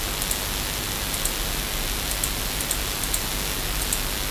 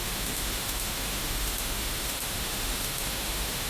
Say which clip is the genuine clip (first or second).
first